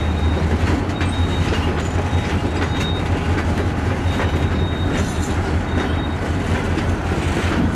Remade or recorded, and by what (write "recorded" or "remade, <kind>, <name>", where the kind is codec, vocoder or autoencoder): recorded